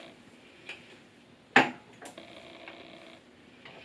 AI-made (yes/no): no